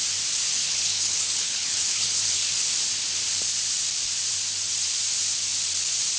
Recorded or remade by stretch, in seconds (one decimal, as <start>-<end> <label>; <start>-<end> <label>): 0.0-0.6 recorded; 0.6-2.5 remade; 2.5-6.2 recorded